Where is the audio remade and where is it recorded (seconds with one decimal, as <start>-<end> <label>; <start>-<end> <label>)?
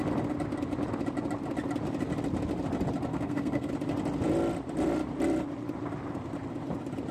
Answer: 0.0-3.1 recorded; 3.1-3.7 remade; 3.7-7.1 recorded